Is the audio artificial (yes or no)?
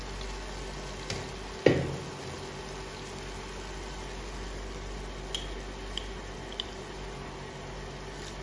no